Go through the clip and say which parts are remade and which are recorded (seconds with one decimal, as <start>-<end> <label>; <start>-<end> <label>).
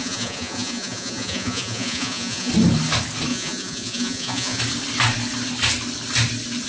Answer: 0.0-2.5 remade; 2.5-3.3 recorded; 3.3-4.6 remade; 4.6-6.7 recorded